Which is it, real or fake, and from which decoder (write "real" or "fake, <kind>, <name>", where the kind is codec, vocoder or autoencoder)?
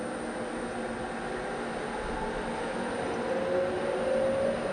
real